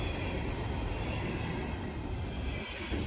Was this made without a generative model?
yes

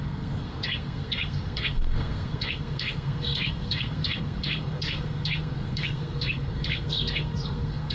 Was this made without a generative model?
no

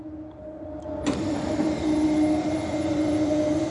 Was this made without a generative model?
no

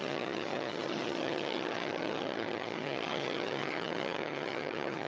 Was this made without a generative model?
no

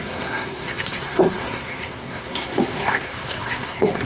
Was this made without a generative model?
no